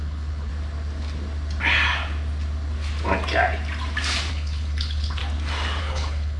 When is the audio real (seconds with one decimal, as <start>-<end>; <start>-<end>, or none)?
0.5-4.3; 5.2-5.8